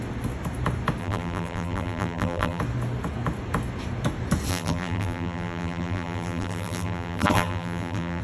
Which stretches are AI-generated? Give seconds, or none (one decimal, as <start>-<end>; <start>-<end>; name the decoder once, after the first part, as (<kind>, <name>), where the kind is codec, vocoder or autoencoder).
1.0-2.6 (vocoder, BigVGAN v2); 4.5-8.2